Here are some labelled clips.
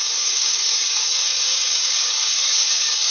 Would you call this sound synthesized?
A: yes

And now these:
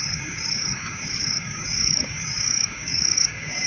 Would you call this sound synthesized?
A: yes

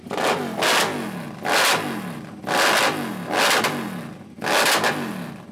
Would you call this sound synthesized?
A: no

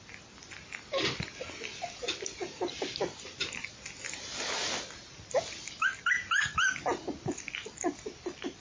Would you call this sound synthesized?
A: no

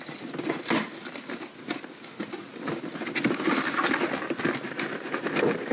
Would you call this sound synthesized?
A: no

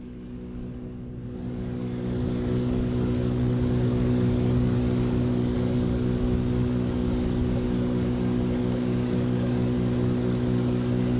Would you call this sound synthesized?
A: yes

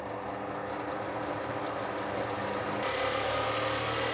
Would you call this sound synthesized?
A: no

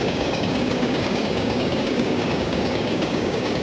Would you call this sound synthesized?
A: yes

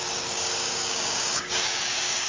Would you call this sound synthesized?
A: yes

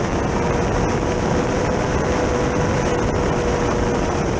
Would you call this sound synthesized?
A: no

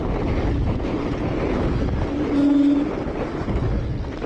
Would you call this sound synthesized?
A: no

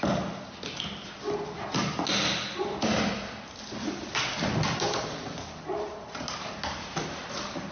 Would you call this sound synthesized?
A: no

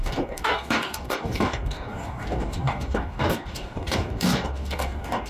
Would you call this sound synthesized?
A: yes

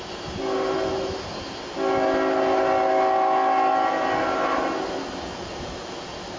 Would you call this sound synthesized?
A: no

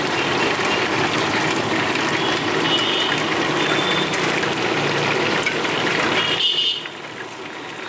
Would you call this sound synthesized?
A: no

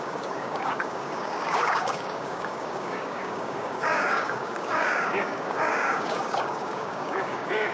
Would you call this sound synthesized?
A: yes